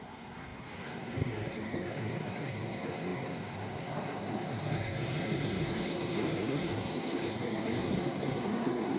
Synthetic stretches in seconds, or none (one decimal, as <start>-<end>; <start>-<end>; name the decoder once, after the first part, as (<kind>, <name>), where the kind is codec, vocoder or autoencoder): 0.0-9.0 (codec, SNAC)